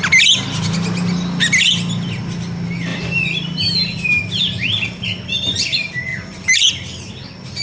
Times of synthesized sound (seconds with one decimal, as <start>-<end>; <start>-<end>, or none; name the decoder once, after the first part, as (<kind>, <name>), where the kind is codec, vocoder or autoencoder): 2.9-4.4 (vocoder, BigVGAN v2); 6.1-6.7